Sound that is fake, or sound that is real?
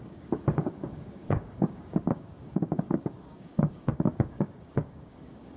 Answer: fake